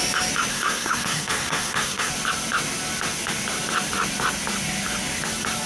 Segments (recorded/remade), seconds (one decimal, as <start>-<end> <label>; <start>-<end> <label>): 0.0-0.5 recorded; 0.5-2.1 remade; 2.1-5.7 recorded